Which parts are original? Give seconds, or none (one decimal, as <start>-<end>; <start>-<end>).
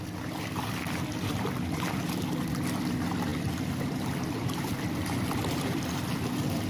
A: none